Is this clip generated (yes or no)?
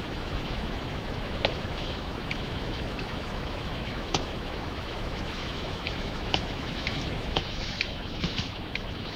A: yes